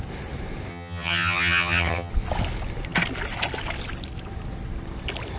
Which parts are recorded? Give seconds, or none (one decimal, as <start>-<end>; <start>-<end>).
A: 0.0-0.7; 2.1-5.4